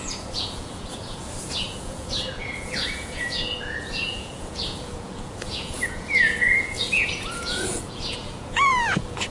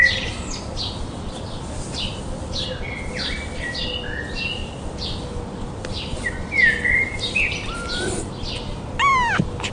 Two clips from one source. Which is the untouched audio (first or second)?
second